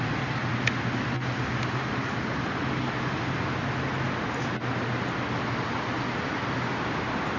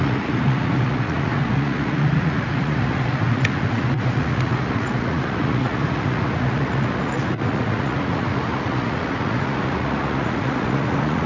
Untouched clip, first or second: first